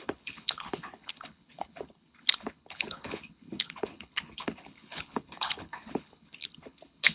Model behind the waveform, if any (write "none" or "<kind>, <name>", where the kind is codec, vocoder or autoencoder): codec, HILCodec